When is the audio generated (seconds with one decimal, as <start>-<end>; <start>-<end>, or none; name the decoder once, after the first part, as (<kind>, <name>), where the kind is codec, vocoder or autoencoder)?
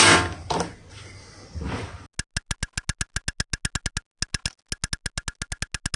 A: none